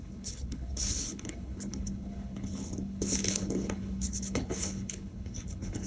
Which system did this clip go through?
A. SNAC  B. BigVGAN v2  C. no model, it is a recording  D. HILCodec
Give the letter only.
D